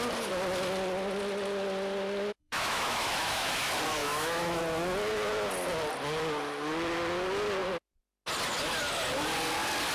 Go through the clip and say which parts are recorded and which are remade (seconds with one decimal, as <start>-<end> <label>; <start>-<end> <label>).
0.0-2.4 recorded; 2.4-3.6 remade; 3.6-4.0 recorded; 4.0-4.6 remade; 4.6-9.9 recorded